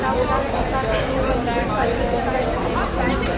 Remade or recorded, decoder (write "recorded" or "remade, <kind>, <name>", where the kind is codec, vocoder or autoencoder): recorded